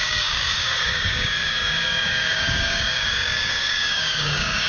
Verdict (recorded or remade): remade